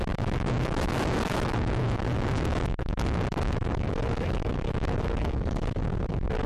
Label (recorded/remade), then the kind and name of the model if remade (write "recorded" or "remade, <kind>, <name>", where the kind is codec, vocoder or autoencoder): remade, autoencoder, DAC-VAE